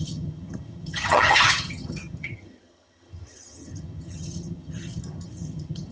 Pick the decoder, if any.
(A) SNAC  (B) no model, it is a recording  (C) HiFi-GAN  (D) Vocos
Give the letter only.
C